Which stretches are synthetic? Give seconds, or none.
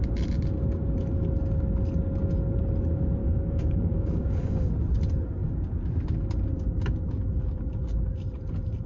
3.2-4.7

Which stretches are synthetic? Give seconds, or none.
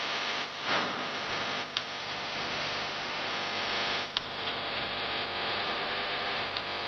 2.0-3.3; 5.6-6.4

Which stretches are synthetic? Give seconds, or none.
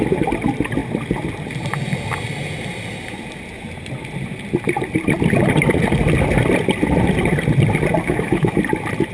8.0-8.6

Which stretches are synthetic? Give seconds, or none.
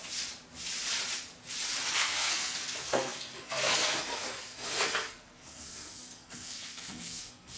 1.9-7.6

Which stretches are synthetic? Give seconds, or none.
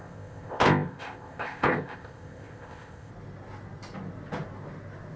0.0-3.1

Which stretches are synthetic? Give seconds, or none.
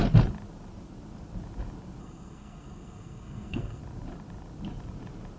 2.0-3.8